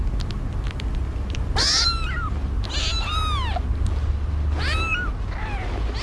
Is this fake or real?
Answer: real